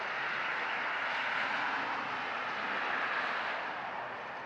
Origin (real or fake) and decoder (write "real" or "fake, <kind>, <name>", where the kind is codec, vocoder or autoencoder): real